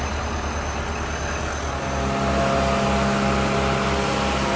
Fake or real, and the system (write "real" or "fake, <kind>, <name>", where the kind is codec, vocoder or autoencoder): real